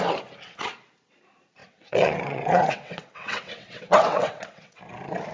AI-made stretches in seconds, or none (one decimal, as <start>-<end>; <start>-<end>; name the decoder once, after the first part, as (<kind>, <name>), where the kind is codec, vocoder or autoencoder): 1.6-4.8 (vocoder, WaveNeXt)